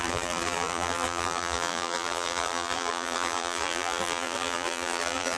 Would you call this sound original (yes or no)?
no